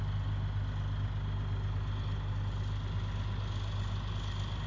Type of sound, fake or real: real